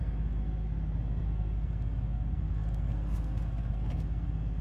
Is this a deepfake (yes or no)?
yes